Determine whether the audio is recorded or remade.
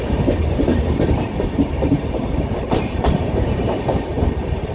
remade